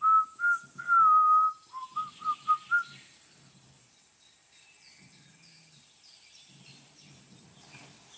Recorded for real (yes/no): yes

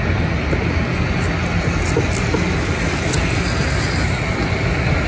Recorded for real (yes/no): yes